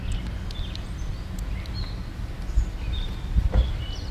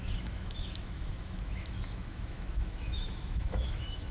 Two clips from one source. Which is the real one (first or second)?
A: first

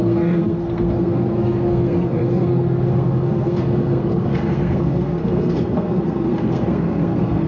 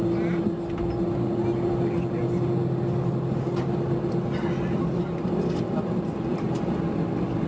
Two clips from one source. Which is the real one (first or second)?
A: second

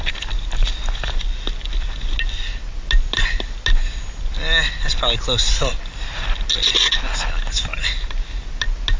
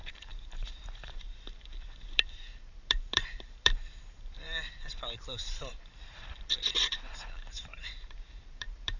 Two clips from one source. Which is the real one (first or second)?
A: first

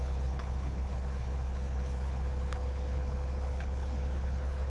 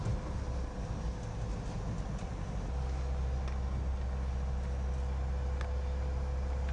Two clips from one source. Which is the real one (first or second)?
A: second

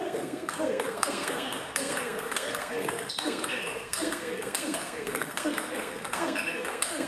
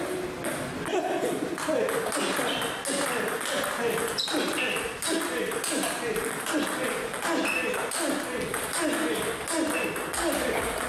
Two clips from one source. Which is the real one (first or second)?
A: second